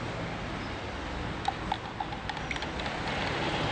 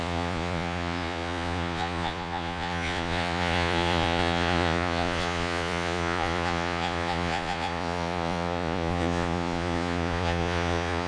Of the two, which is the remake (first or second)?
second